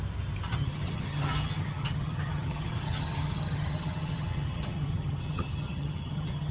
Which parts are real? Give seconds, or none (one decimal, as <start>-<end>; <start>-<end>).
0.0-0.5